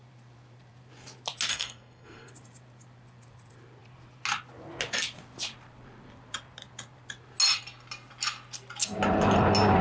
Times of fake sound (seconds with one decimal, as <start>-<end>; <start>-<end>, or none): 1.5-2.3